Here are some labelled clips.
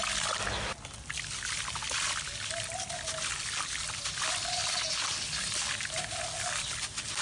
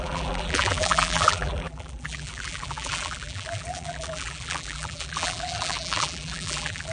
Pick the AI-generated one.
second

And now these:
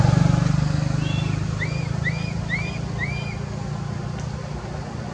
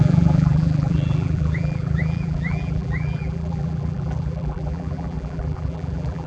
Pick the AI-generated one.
second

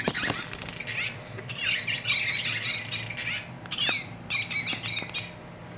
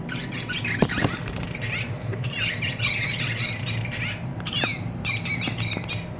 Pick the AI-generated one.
second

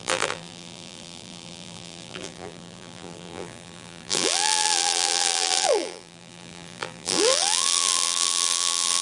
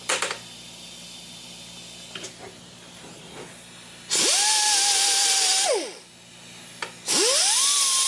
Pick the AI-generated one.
first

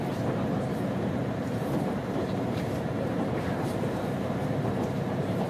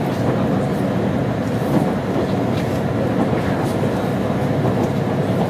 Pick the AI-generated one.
first